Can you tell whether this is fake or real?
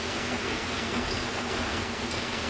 fake